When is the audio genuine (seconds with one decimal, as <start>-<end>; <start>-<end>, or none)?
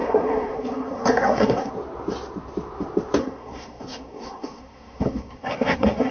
1.7-3.2